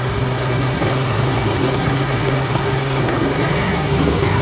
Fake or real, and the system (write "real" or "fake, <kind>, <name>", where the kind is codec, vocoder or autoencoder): fake, codec, SNAC